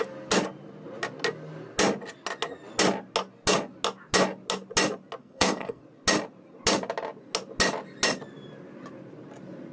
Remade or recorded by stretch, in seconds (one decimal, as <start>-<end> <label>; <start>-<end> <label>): 0.0-5.2 recorded; 5.2-5.8 remade; 5.8-9.7 recorded